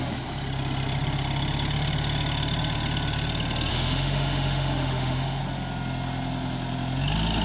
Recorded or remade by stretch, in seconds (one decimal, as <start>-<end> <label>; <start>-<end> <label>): 0.0-3.7 recorded; 3.7-5.4 remade; 5.4-7.4 recorded